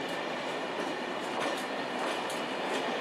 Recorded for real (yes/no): yes